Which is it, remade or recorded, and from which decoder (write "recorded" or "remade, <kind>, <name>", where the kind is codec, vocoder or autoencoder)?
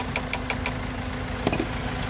recorded